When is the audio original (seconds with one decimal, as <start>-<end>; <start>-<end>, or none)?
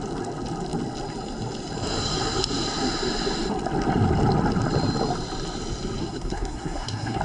0.0-6.0